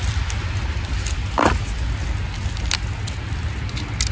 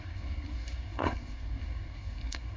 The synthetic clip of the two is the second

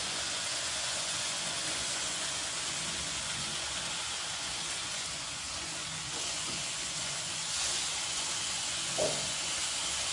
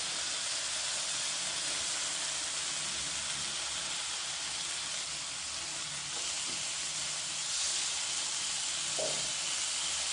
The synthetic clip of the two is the first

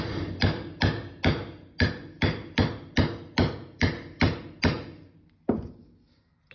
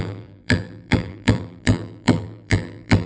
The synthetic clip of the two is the second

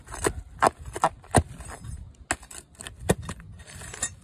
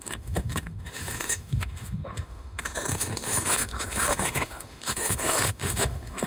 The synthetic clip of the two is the second